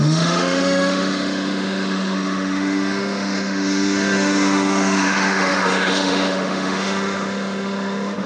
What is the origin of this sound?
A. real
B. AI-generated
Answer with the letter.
B